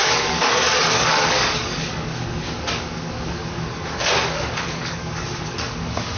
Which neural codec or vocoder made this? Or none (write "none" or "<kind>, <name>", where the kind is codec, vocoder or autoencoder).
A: codec, DAC